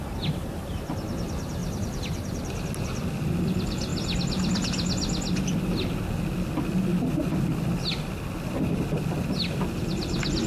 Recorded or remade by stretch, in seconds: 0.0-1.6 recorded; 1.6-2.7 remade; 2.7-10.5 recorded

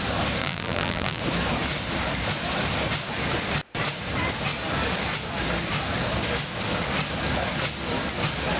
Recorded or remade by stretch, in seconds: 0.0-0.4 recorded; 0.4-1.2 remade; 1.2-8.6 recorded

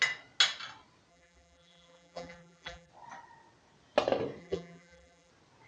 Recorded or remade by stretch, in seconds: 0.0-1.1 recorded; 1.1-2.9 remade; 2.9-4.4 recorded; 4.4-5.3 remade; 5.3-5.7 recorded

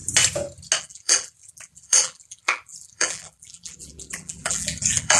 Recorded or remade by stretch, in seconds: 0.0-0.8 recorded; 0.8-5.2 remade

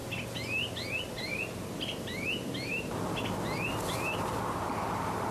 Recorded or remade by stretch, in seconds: 0.0-1.3 recorded; 1.3-3.1 remade; 3.1-5.3 recorded

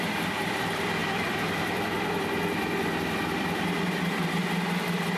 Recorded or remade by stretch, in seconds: 0.0-5.2 remade

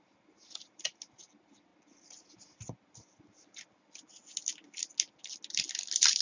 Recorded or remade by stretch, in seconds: 0.0-6.2 recorded